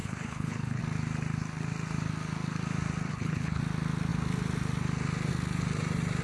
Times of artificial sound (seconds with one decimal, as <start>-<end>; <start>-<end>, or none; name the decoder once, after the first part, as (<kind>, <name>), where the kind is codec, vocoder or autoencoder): 0.0-0.8 (codec, HILCodec); 3.1-3.6